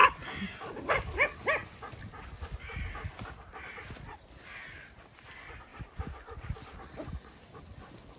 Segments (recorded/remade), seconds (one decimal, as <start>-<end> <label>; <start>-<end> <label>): 0.0-5.7 recorded; 5.7-7.1 remade; 7.1-8.2 recorded

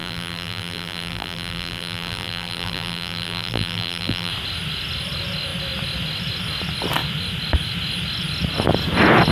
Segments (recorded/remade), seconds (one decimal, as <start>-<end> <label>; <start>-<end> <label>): 0.0-4.3 remade; 4.3-9.3 recorded

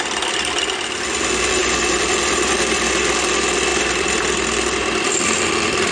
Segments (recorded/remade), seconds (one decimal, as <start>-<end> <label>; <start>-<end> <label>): 0.0-1.6 recorded; 1.6-2.9 remade; 2.9-3.7 recorded; 3.7-5.5 remade; 5.5-5.9 recorded